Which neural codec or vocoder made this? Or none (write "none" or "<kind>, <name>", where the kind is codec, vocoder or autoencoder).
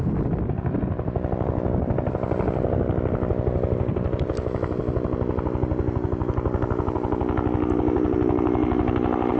none